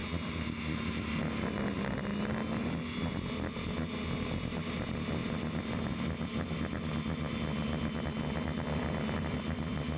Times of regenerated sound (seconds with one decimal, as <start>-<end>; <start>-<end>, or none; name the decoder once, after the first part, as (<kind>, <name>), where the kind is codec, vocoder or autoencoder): none